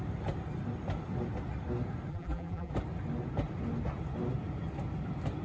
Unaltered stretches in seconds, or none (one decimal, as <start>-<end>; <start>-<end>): 0.0-2.1; 2.7-5.4